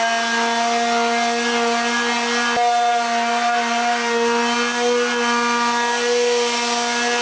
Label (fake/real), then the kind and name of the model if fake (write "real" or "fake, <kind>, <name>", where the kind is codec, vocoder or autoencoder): real